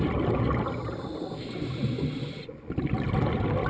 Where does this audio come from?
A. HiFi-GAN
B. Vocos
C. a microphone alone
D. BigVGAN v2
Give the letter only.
C